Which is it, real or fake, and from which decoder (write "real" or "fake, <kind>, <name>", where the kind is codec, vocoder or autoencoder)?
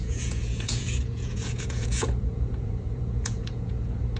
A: fake, vocoder, Vocos